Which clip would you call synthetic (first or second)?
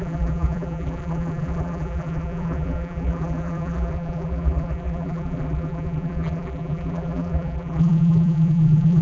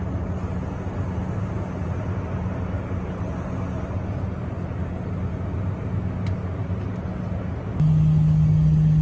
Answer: first